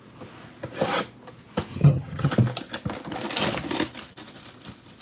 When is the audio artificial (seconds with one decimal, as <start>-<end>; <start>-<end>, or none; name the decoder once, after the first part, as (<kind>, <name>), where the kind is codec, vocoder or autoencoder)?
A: 1.7-2.3 (vocoder, HiFi-GAN)